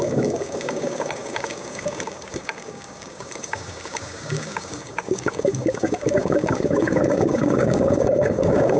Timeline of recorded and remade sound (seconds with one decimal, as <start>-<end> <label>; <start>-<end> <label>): 0.0-8.8 remade